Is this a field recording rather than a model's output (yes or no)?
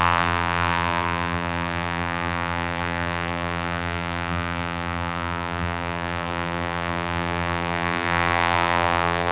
no